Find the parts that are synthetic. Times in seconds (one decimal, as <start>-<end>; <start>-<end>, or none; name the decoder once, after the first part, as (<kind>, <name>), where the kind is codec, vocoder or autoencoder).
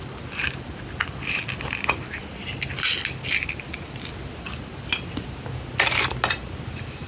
none